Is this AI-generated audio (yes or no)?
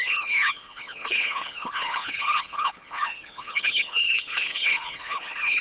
yes